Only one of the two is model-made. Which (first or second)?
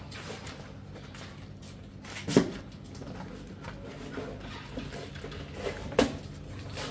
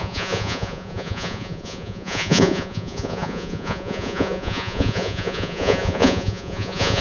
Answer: second